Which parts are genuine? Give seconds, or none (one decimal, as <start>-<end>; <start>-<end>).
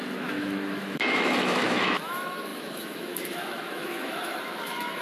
none